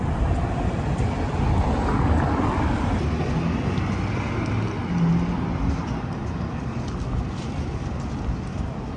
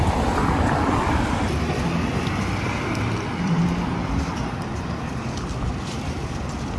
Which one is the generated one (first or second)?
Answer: second